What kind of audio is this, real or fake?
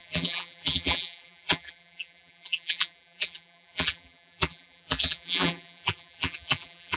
fake